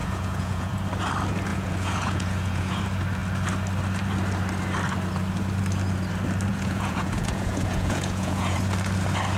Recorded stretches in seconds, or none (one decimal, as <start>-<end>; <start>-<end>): 0.7-1.5; 2.8-6.5; 8.6-9.4